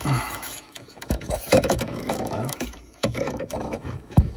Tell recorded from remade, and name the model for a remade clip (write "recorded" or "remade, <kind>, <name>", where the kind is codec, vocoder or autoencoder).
remade, autoencoder, DAC-VAE